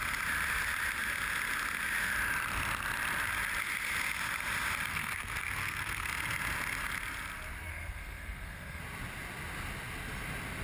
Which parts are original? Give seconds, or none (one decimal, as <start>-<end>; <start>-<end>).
0.0-4.9; 6.1-7.7; 8.8-10.6